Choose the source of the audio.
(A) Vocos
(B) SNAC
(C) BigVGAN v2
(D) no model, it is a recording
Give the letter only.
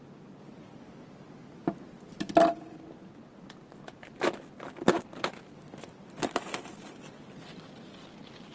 D